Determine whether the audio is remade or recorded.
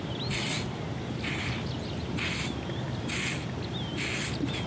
recorded